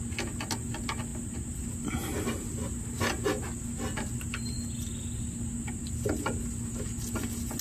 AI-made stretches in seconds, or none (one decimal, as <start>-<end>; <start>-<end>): none